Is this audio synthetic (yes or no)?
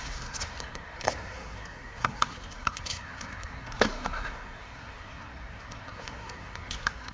yes